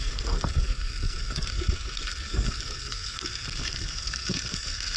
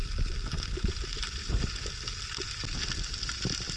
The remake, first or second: first